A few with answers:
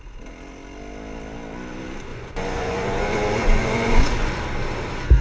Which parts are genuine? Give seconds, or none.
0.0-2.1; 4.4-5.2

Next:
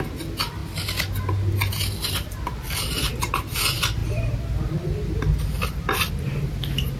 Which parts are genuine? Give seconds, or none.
0.0-7.0

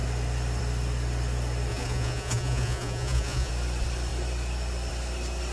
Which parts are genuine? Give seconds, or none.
0.0-1.7; 3.5-5.5

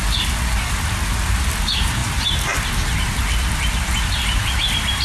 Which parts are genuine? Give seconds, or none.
0.0-5.0

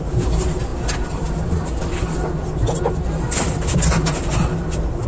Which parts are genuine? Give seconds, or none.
0.0-5.1

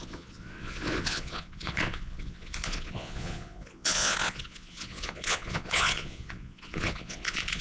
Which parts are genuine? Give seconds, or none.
none

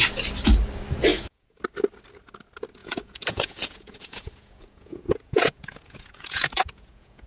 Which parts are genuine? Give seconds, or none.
0.0-1.1; 1.6-2.8